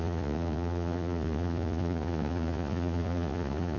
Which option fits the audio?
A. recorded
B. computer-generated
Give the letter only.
B